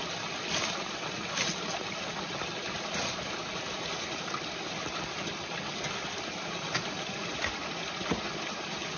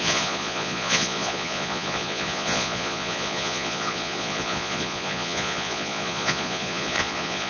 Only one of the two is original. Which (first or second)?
first